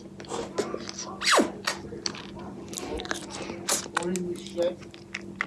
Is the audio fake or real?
real